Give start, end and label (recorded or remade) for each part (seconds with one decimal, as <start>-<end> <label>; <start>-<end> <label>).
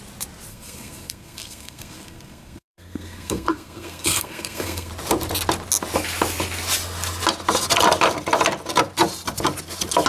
0.0-0.5 recorded; 0.5-4.9 remade; 4.9-10.1 recorded